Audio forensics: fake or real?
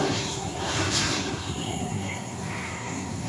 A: fake